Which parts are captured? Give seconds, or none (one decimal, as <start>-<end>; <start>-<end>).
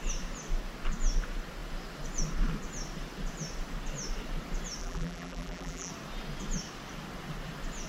0.0-4.8; 5.9-7.9